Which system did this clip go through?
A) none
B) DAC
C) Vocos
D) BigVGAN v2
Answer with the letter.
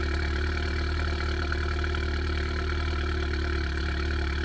D